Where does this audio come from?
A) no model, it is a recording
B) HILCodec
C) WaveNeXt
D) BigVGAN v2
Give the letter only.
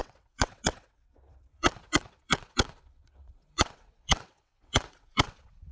C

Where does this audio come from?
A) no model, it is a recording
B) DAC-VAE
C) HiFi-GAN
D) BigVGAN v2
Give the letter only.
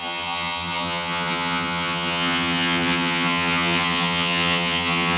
C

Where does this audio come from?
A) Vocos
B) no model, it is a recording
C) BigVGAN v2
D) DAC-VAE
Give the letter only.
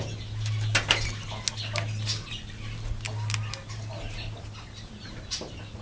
B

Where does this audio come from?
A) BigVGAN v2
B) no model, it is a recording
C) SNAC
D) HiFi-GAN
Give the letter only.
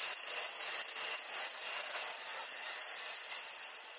B